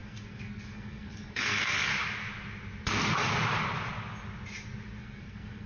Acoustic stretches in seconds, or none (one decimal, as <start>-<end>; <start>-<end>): 1.9-5.0